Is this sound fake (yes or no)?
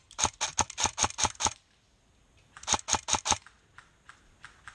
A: no